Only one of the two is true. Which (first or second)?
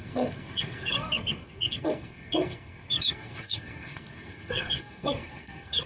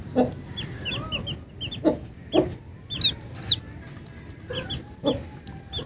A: second